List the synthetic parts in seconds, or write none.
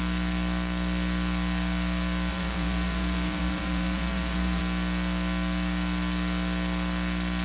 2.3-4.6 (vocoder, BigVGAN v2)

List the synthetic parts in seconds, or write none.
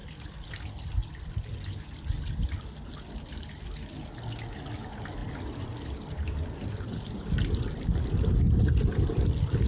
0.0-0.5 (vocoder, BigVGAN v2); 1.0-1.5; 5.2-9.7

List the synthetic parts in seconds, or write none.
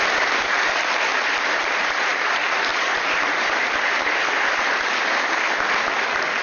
1.1-2.3 (vocoder, BigVGAN v2); 2.7-5.3